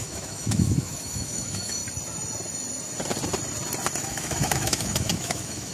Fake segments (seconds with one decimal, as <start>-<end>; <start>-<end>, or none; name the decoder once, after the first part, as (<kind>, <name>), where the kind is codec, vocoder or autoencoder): 0.0-1.8 (autoencoder, DAC-VAE); 4.0-5.7